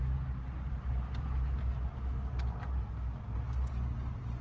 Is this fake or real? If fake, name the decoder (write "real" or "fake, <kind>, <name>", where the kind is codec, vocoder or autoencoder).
real